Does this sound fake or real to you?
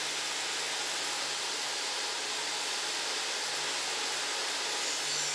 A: real